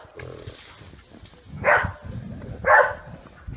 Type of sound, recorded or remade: recorded